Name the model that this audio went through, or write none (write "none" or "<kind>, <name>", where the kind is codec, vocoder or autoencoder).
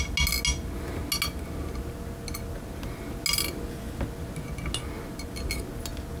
none